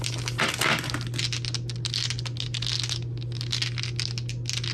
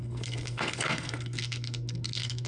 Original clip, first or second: first